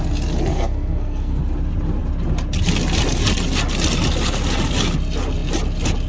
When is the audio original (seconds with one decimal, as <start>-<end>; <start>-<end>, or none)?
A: 0.0-0.5; 1.4-6.1